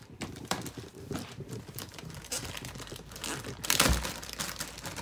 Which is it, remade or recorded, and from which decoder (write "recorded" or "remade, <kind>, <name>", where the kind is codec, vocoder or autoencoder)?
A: remade, vocoder, BigVGAN v2